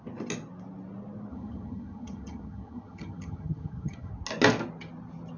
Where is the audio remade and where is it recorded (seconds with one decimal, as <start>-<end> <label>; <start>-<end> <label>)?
0.0-1.3 recorded; 1.3-4.1 remade; 4.1-5.4 recorded